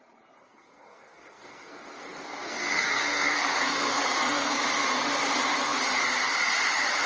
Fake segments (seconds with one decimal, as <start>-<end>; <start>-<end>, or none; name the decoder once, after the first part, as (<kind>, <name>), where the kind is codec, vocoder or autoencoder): 0.4-4.6 (codec, SNAC)